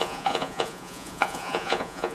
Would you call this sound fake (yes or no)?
yes